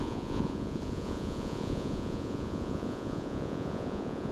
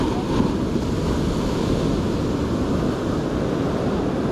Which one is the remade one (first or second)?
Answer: first